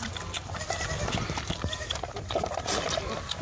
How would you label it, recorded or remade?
recorded